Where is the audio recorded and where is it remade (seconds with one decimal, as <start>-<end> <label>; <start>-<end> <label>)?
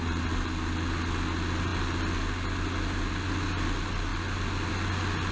0.0-5.3 recorded